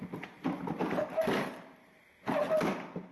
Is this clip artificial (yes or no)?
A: no